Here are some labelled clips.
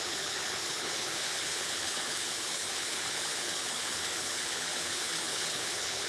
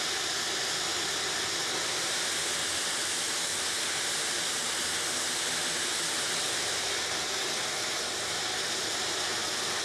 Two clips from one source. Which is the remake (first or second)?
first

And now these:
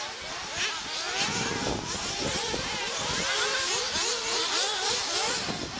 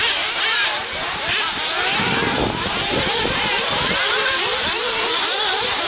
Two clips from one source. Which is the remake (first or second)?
second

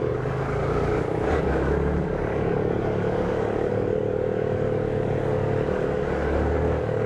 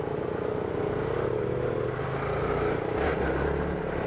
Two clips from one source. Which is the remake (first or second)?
first